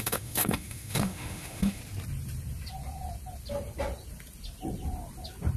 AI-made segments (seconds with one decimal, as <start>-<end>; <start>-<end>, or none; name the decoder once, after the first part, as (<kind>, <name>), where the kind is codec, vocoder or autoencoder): 0.0-1.8 (autoencoder, DAC-VAE)